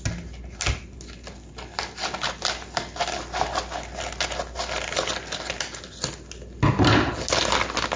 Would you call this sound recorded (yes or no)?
yes